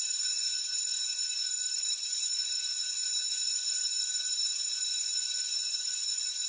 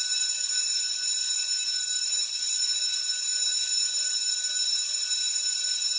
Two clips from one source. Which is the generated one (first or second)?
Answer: first